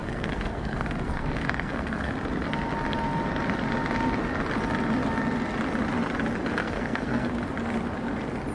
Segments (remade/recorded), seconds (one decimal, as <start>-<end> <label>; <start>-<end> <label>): 0.0-2.1 remade; 2.1-6.6 recorded; 6.6-7.4 remade; 7.4-8.5 recorded